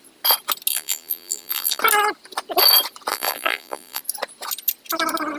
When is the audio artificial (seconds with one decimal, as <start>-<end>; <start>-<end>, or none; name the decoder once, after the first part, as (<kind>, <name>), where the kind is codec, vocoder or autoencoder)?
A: 0.7-1.8 (vocoder, BigVGAN v2); 3.1-4.0